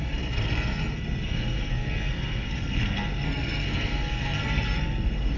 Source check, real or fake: fake